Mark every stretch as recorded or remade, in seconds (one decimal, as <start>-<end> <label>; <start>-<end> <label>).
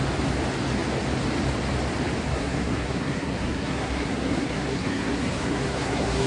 0.0-2.3 recorded; 2.3-6.3 remade